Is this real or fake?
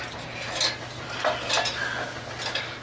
real